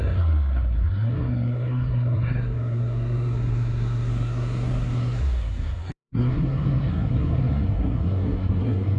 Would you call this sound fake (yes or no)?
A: yes